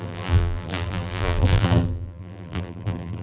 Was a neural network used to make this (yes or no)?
yes